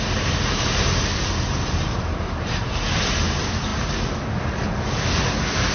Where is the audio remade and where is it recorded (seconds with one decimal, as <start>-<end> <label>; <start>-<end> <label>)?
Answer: 0.0-3.7 remade; 3.7-5.7 recorded